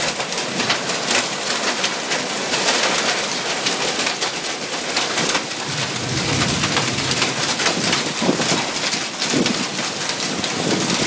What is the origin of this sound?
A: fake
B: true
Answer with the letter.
B